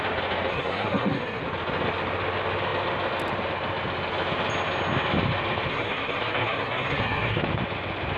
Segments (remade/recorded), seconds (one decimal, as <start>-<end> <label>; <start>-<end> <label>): 0.0-0.5 recorded; 0.5-1.4 remade; 1.4-5.7 recorded; 5.7-7.4 remade; 7.4-8.2 recorded